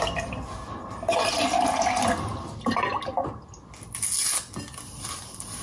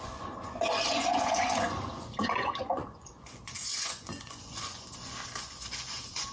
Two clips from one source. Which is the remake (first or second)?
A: second